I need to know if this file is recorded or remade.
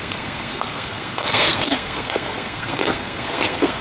remade